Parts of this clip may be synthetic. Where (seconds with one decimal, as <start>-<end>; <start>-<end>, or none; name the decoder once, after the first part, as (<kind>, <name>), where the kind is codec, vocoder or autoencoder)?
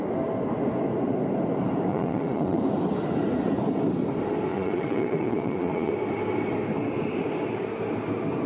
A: 1.9-2.6 (vocoder, Vocos); 4.5-5.9